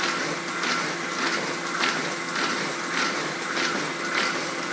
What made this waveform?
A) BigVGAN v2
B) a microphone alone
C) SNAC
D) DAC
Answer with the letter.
B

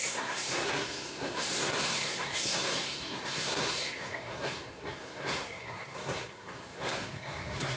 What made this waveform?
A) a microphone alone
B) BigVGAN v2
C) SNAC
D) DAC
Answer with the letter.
C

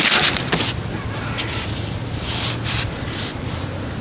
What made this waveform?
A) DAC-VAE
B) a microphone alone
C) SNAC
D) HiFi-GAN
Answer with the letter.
B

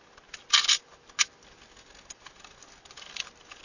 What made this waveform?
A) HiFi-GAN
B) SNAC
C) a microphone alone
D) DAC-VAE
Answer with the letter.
C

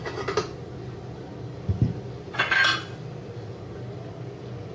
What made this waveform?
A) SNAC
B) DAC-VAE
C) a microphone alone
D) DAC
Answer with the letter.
C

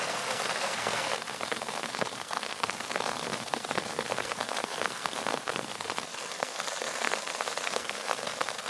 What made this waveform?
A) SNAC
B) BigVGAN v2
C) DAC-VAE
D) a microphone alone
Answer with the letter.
A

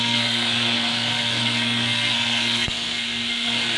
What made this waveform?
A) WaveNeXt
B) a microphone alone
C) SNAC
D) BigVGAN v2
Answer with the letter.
C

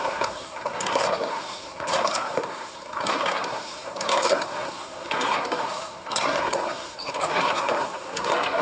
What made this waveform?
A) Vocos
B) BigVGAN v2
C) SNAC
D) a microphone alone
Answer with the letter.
C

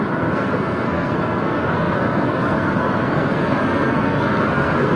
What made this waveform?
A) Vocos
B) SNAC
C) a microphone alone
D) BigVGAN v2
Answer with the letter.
B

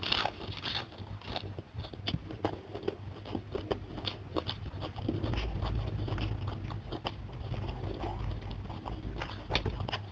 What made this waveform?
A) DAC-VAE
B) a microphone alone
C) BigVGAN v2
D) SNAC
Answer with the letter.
B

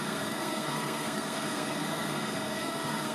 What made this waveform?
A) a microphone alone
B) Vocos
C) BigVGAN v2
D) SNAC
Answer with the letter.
D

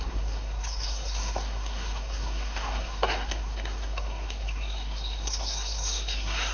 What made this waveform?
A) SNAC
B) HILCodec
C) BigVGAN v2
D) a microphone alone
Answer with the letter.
A